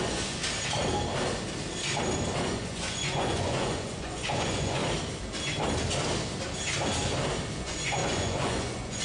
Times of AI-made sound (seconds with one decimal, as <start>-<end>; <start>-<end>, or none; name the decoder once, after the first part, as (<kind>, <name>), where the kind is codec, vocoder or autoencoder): 0.0-0.4 (vocoder, Vocos); 2.4-4.8; 7.6-9.0